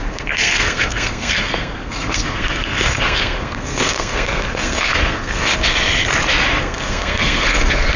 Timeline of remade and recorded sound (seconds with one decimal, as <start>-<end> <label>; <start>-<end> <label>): 0.0-5.5 remade; 5.5-6.6 recorded; 6.6-8.0 remade